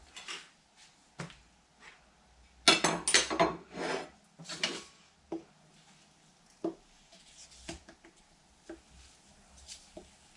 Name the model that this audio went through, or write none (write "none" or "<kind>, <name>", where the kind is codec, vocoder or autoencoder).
none